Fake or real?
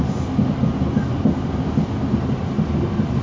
real